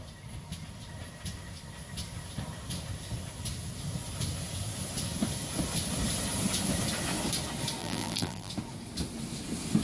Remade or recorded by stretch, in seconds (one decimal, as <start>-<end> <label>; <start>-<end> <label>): 0.0-7.8 recorded; 7.8-8.5 remade; 8.5-9.8 recorded